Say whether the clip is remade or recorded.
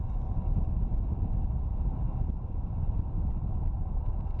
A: recorded